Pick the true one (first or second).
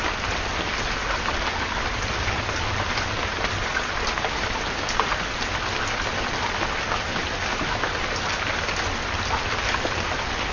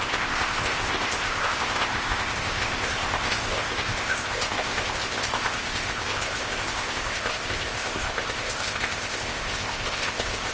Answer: first